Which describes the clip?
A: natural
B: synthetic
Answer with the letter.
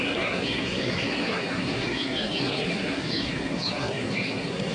B